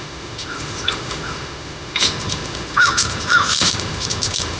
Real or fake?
fake